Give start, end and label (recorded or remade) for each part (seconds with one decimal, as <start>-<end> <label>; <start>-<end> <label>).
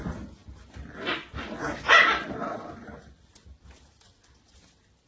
0.0-5.1 recorded